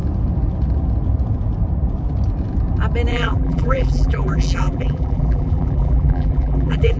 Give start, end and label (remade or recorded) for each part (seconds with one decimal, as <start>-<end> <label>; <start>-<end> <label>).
0.0-3.1 recorded; 3.1-7.0 remade